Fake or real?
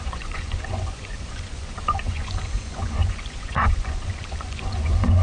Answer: fake